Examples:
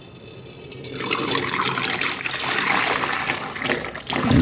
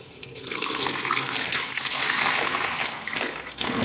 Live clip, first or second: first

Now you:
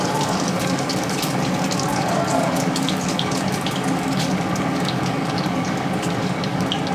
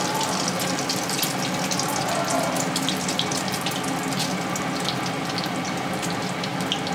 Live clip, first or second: second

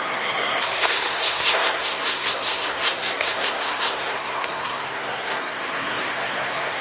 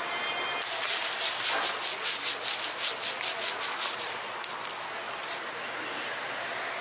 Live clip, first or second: second